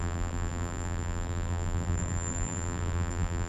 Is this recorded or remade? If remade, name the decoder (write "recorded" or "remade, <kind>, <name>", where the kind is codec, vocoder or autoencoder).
remade, vocoder, BigVGAN v2